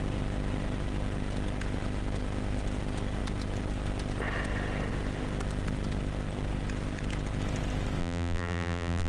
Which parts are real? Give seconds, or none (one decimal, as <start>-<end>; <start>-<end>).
0.0-8.0